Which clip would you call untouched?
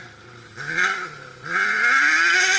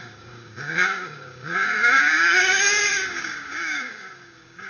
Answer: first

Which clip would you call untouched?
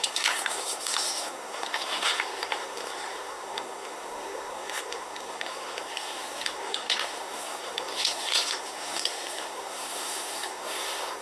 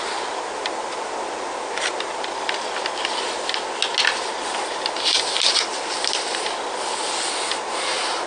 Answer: second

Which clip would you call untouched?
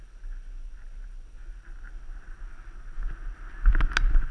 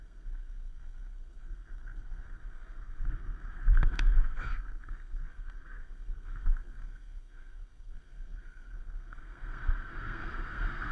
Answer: first